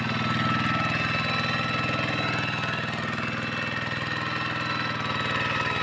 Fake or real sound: real